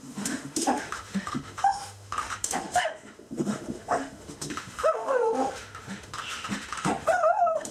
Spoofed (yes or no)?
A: yes